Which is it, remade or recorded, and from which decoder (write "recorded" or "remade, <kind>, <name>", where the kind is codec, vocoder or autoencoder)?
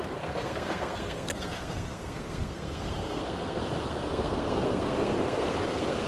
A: remade, codec, SNAC